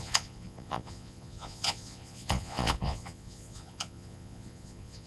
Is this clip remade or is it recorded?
remade